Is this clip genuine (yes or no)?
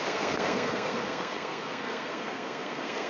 no